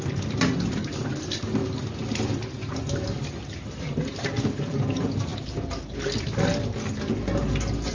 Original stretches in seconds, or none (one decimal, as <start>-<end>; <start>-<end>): 0.0-7.9